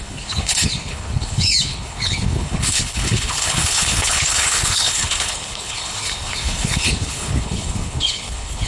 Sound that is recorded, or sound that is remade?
remade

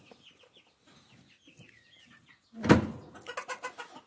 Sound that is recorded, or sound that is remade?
recorded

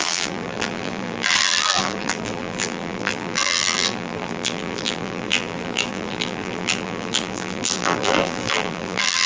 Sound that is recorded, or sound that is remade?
remade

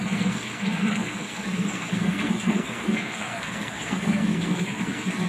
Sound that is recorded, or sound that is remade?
remade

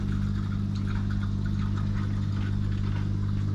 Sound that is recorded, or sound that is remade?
recorded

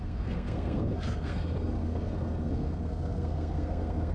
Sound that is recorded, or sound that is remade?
remade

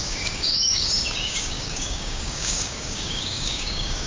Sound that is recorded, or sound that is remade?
remade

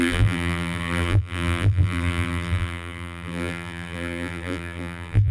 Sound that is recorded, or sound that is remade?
remade